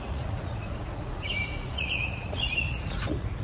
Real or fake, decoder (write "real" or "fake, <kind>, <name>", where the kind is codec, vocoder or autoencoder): fake, vocoder, Vocos